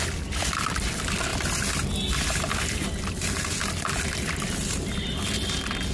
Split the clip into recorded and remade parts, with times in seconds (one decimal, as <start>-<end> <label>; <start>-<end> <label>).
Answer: 0.0-5.9 recorded